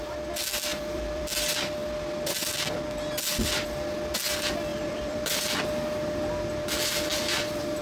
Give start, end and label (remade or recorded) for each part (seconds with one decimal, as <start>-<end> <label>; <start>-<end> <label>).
0.0-0.7 recorded; 0.7-1.2 remade; 1.2-4.7 recorded; 4.7-5.4 remade; 5.4-7.1 recorded; 7.1-7.8 remade